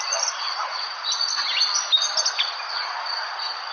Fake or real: real